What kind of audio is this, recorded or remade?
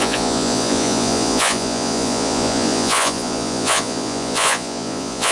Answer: remade